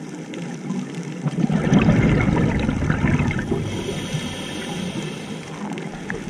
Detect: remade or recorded recorded